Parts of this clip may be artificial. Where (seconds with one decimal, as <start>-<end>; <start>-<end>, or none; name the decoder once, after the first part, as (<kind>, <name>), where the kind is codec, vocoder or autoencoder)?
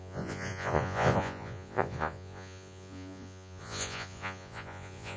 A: 0.0-5.2 (vocoder, Vocos)